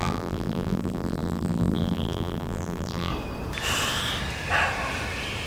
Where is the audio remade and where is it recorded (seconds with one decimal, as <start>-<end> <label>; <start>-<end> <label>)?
0.0-3.1 remade; 3.1-5.5 recorded